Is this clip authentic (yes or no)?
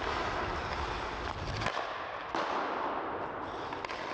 yes